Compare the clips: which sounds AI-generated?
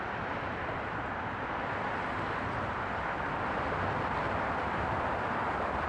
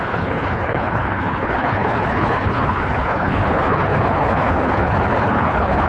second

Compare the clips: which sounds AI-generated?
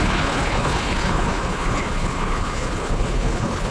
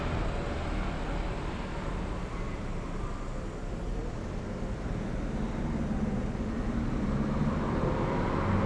first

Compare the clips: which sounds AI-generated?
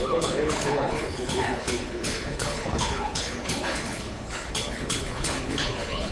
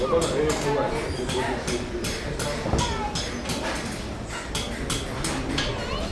first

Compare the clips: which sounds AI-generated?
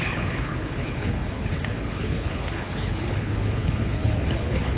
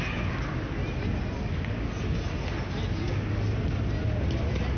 first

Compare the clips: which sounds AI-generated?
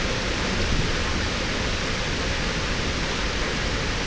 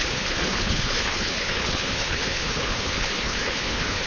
second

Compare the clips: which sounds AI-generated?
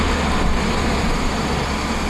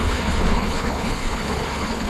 second